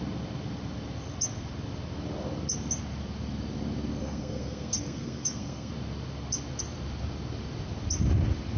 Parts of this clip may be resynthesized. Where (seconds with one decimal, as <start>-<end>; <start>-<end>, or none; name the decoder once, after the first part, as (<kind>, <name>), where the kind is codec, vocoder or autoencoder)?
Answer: 4.0-5.7 (codec, SNAC)